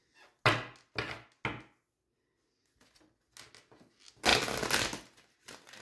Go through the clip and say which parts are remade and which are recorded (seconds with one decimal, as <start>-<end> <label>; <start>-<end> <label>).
0.0-5.8 recorded